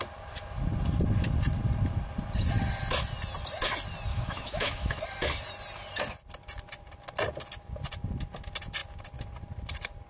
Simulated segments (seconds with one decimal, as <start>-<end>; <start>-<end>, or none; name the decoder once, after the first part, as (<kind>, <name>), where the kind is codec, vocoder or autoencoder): 4.1-5.0 (autoencoder, DAC-VAE)